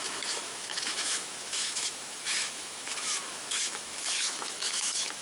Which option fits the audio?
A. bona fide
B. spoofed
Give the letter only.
B